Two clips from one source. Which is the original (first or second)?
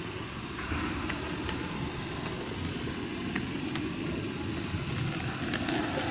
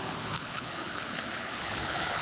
first